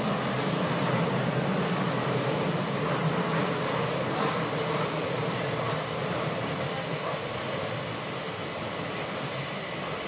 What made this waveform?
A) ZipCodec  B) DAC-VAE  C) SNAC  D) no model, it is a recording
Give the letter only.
D